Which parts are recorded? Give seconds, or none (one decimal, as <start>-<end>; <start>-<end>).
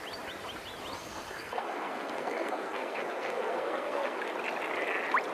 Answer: 0.0-1.0; 4.2-5.3